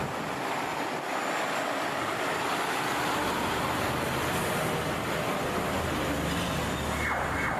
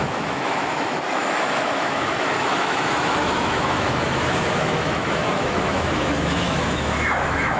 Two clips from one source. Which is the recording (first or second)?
first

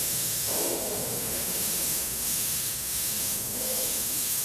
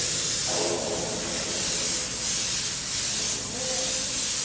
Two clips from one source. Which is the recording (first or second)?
second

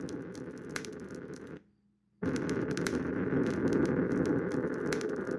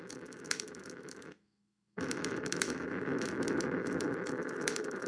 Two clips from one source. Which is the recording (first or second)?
first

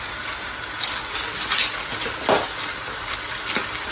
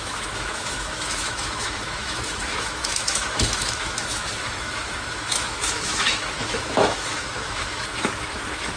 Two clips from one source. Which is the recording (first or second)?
first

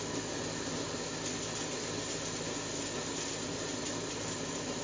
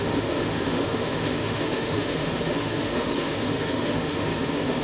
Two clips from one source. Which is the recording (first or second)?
first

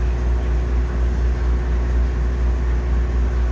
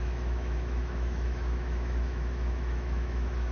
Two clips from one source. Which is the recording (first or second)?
first